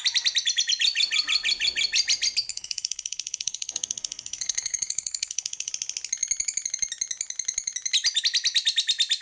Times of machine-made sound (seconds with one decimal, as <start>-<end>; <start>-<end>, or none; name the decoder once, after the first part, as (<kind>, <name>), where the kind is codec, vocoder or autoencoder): 2.5-5.7 (codec, SNAC)